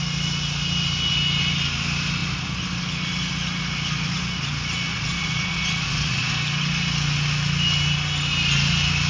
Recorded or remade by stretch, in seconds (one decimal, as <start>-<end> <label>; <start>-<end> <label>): 0.0-4.9 recorded; 4.9-6.3 remade; 6.3-9.1 recorded